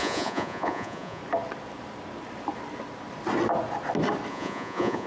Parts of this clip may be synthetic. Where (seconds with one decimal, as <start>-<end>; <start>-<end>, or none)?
0.0-1.2; 4.3-5.1